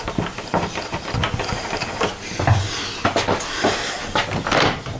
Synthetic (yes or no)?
no